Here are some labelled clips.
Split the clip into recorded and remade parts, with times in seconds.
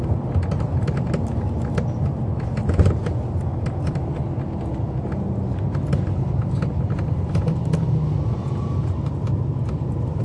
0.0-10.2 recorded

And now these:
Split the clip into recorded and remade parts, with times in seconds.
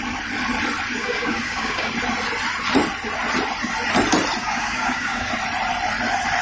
0.0-1.0 recorded; 1.0-1.9 remade; 1.9-4.4 recorded; 4.4-5.3 remade; 5.3-6.4 recorded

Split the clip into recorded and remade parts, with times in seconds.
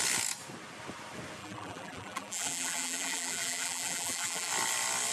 0.0-1.4 recorded; 1.4-4.5 remade; 4.5-5.1 recorded